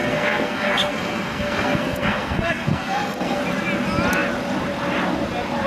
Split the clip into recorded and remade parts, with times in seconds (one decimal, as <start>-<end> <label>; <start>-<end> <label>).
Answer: 0.0-3.4 remade; 3.4-5.7 recorded